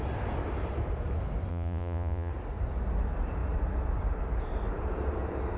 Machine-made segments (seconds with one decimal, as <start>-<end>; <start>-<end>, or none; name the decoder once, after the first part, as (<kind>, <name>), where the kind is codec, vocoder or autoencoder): 1.5-2.3 (vocoder, Vocos)